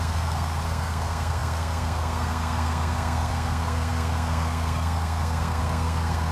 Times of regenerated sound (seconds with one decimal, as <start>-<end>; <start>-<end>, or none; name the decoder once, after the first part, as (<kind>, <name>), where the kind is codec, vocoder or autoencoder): 0.0-6.3 (codec, SNAC)